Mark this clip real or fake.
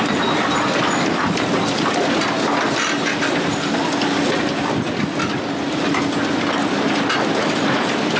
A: real